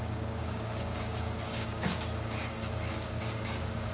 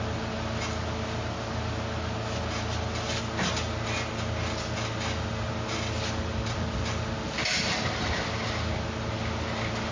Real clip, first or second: second